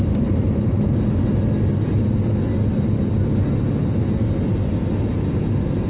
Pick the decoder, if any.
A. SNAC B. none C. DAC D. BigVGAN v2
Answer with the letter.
B